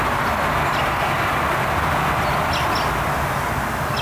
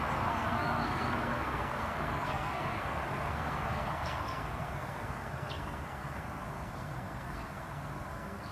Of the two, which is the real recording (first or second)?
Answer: first